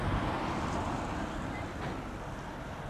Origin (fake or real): real